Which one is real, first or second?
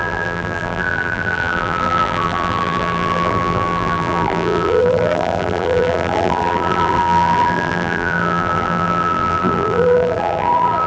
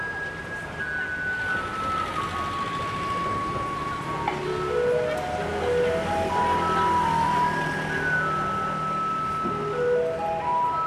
second